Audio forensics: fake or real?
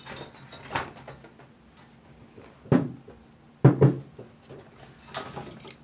real